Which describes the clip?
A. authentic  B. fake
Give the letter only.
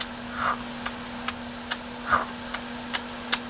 A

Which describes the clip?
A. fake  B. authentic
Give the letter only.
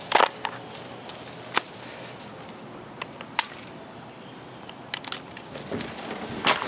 B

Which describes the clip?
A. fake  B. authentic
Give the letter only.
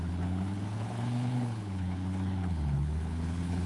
A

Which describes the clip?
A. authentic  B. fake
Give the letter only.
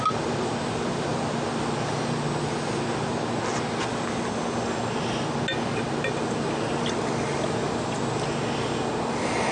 A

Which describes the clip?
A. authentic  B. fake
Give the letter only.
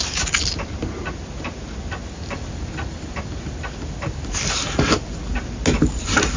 A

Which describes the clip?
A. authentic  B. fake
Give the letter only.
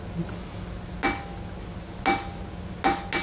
A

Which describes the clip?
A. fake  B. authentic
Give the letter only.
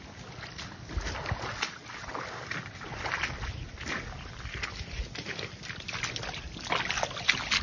B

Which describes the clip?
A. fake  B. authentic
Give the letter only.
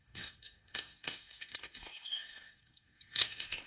A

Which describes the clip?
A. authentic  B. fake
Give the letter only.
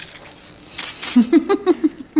A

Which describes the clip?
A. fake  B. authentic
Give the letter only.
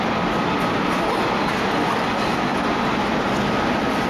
B